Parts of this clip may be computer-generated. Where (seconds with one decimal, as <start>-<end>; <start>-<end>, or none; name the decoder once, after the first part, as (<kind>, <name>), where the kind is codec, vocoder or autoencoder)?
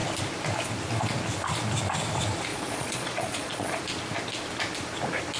2.5-3.8 (vocoder, Vocos)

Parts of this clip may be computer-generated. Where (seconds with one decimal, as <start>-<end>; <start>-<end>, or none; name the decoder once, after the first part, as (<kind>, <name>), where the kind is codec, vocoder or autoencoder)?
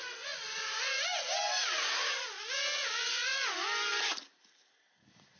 none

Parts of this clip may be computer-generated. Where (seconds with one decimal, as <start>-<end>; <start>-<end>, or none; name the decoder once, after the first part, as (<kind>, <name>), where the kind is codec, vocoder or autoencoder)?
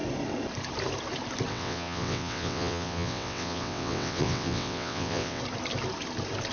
1.5-5.4 (vocoder, WaveNeXt)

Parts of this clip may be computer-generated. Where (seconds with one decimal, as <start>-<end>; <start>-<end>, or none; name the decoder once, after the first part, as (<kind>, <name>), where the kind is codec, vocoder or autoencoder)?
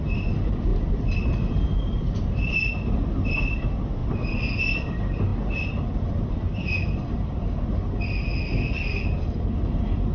0.0-0.7 (vocoder, BigVGAN v2); 2.0-5.3; 5.9-10.1